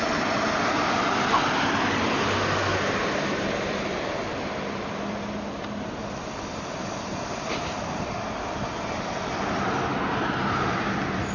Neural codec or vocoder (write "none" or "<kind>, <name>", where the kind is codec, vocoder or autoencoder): none